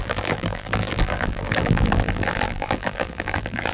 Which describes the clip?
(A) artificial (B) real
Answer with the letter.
A